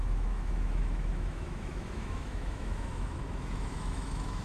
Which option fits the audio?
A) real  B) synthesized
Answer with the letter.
B